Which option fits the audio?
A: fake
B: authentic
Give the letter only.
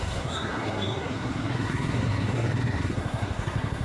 A